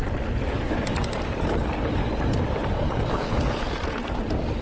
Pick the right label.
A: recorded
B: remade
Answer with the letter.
A